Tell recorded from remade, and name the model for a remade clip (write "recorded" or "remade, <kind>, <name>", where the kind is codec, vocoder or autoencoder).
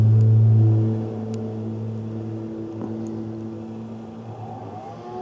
recorded